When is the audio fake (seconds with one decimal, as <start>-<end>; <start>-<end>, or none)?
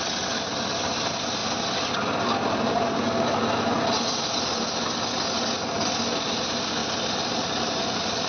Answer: none